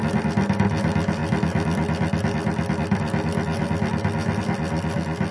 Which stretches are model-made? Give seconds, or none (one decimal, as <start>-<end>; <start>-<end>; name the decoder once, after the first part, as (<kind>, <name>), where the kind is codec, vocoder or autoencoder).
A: none